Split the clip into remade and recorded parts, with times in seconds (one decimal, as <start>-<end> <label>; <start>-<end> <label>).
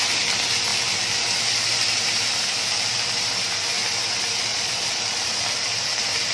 0.0-4.5 recorded; 4.5-5.0 remade; 5.0-6.3 recorded